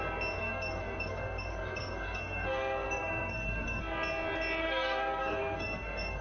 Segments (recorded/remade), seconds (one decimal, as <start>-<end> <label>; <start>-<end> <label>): 0.0-0.4 recorded; 0.4-3.8 remade; 3.8-4.6 recorded; 4.6-6.2 remade